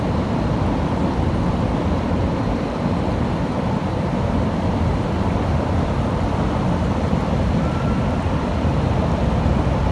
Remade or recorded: recorded